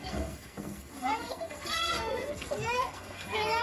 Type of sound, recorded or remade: remade